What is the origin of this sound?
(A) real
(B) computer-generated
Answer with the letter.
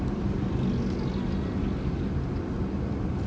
A